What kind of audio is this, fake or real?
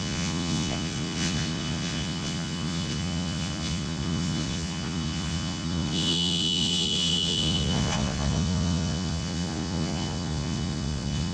fake